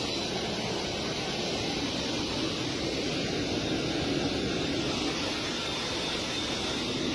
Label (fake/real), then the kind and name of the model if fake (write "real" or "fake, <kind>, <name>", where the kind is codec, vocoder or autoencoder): real